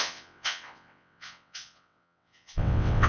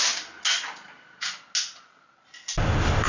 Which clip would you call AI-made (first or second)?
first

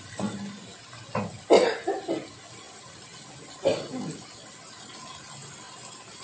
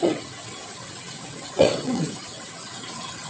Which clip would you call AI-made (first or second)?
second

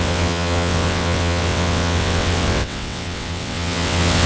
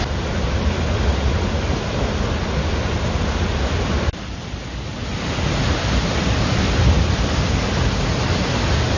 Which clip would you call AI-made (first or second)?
first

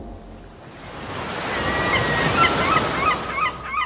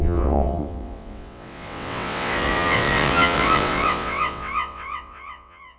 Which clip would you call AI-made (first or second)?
second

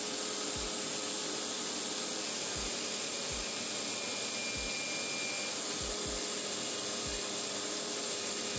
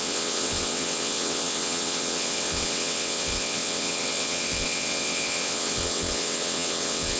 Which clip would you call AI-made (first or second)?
second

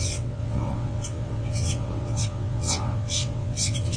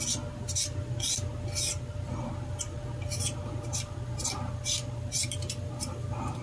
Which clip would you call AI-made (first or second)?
first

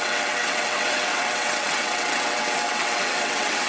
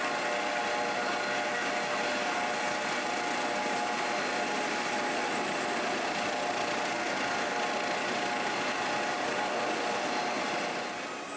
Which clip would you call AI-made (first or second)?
first